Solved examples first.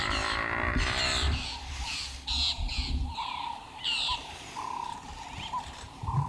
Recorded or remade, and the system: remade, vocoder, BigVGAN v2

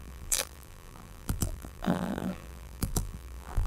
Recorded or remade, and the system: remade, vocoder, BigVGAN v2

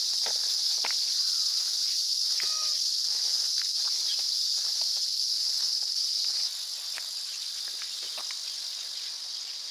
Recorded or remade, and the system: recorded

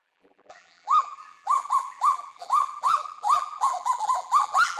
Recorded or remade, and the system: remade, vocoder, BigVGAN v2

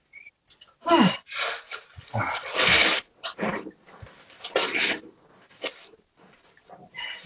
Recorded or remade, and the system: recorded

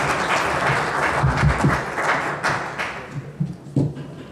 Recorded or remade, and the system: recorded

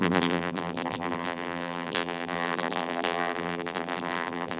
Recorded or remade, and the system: remade, vocoder, BigVGAN v2